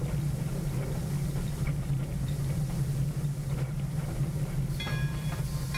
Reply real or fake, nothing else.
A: real